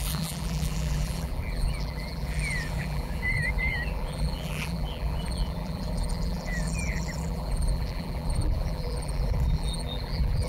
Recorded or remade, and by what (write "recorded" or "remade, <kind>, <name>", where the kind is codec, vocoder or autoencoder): remade, vocoder, BigVGAN v2